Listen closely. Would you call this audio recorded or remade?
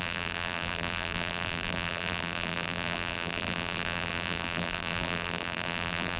remade